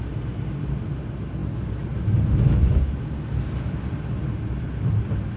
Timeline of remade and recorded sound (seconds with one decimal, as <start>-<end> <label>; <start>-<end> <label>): 0.0-5.4 recorded